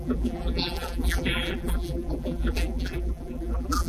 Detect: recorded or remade remade